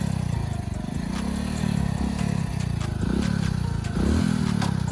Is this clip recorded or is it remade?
recorded